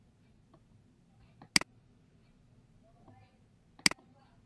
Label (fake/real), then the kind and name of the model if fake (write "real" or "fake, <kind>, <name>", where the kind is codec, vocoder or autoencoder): real